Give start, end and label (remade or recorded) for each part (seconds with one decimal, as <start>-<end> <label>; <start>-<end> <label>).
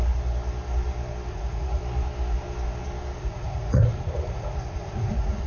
0.0-1.3 recorded; 1.3-1.8 remade; 1.8-3.2 recorded; 3.2-5.5 remade